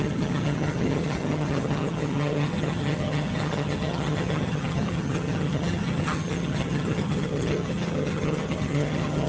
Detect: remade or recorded remade